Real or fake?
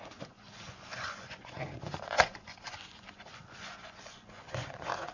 fake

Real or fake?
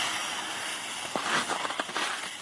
real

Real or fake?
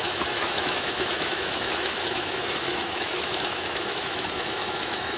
fake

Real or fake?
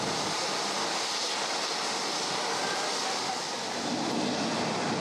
real